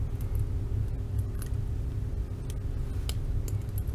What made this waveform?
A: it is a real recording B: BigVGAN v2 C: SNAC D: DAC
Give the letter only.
A